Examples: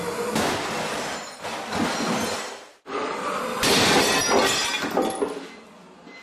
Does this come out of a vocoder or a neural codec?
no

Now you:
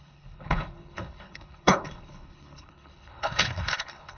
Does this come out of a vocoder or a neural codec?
yes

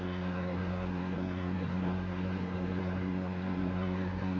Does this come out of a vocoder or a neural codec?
yes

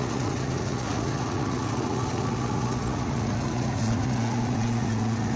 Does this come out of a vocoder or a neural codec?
yes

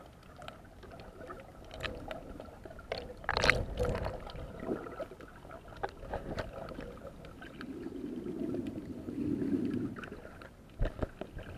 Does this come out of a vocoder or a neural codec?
no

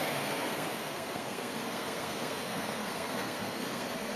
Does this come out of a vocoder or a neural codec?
yes